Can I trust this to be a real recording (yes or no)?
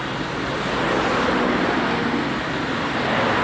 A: yes